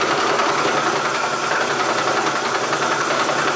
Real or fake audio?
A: real